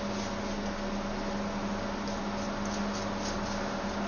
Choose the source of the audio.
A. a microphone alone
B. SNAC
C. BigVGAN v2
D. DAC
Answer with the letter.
A